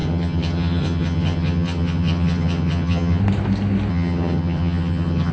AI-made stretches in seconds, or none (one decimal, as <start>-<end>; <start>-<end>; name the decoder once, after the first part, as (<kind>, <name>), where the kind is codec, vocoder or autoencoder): 0.0-3.2 (vocoder, HiFi-GAN); 3.9-5.3